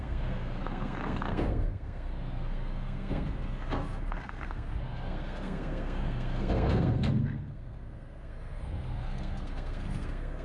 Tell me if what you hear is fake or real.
fake